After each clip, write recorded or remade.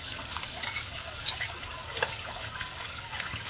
remade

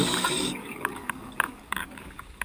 remade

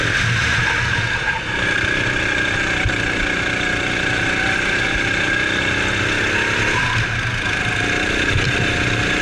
recorded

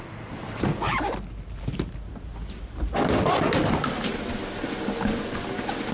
recorded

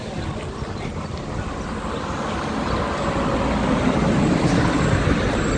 recorded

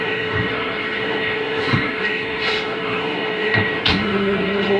remade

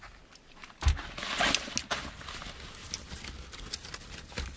recorded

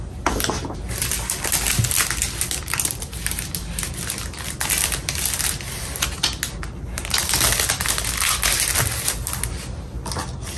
recorded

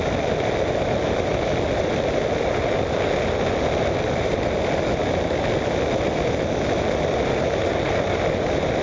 recorded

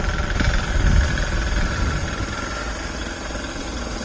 recorded